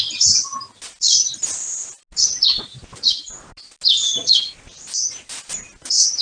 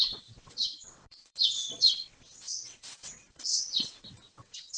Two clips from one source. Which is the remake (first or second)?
second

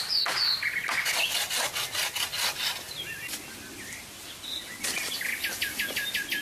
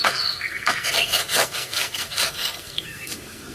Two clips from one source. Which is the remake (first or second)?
second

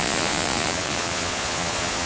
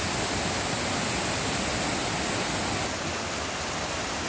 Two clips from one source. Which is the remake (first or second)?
first